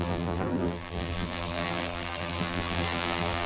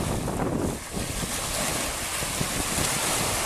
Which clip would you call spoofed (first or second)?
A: first